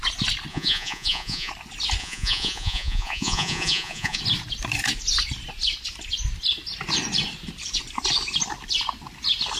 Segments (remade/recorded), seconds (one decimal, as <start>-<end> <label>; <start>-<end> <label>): 0.0-0.5 recorded; 0.5-1.5 remade; 1.5-2.0 recorded; 2.0-4.2 remade; 4.2-9.6 recorded